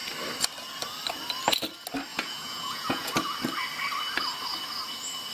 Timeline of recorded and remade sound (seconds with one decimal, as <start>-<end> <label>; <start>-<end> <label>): 0.0-2.1 recorded; 2.1-3.1 remade; 3.1-5.3 recorded